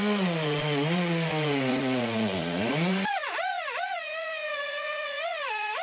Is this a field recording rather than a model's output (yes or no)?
no